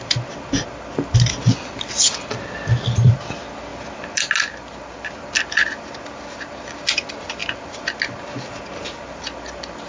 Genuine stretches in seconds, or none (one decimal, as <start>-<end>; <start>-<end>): 0.0-9.9